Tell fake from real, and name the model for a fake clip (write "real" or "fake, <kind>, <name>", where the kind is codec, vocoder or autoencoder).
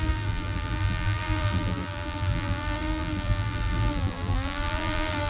fake, vocoder, BigVGAN v2